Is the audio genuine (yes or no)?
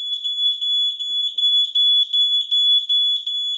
yes